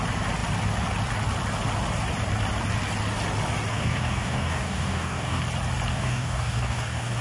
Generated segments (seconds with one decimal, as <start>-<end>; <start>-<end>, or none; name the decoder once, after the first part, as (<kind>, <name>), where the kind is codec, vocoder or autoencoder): 3.7-5.4 (codec, DAC); 5.9-7.2